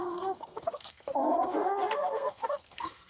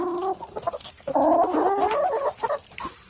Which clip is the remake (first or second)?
first